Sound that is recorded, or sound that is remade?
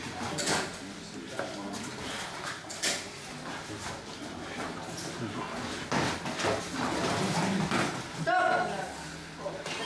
recorded